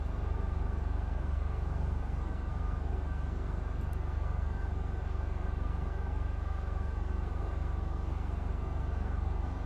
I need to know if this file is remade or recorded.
remade